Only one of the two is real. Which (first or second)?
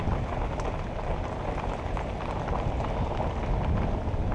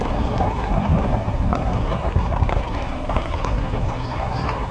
first